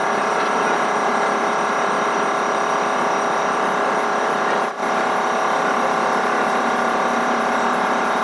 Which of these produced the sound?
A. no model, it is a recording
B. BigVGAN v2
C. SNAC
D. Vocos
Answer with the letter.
B